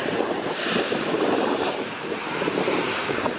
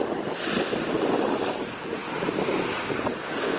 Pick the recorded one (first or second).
second